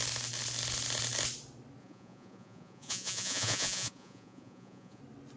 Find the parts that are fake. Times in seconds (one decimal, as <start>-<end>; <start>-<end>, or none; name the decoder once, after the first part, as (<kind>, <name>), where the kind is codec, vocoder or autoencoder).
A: 1.8-5.0 (vocoder, Vocos)

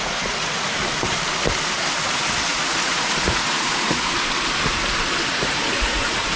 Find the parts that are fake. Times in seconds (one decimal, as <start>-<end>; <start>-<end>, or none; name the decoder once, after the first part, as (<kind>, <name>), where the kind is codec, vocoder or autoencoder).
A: 0.0-0.8 (vocoder, Vocos); 2.4-4.1; 5.3-6.4

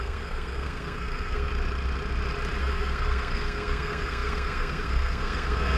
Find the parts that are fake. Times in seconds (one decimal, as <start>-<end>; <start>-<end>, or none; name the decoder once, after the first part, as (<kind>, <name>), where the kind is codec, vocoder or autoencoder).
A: 0.0-1.5 (codec, SNAC); 2.6-5.8